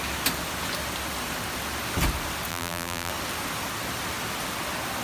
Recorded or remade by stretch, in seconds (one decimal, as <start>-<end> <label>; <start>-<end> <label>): 0.0-2.5 recorded; 2.5-3.1 remade; 3.1-5.0 recorded